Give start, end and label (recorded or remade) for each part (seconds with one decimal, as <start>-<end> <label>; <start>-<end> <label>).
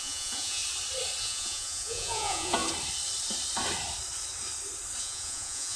0.0-0.6 remade; 0.6-1.2 recorded; 1.2-2.6 remade; 2.6-5.0 recorded; 5.0-5.8 remade